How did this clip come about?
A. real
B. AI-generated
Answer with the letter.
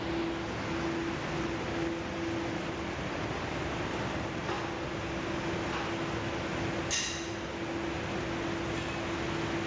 A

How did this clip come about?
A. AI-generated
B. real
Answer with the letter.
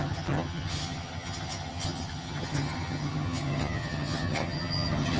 A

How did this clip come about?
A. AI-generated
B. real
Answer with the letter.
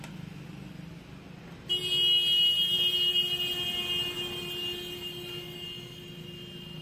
B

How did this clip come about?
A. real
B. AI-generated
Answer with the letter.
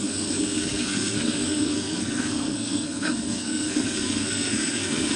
B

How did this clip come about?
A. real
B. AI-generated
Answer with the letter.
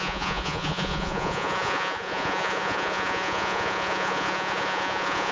B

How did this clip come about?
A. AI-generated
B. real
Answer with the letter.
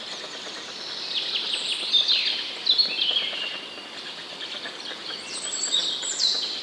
B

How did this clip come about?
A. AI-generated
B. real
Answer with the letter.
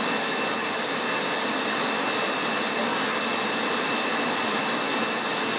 B